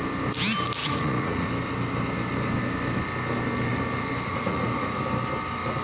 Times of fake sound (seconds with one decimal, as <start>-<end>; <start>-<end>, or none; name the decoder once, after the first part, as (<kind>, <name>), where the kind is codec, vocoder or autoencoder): 0.8-1.5 (vocoder, Vocos); 4.3-5.0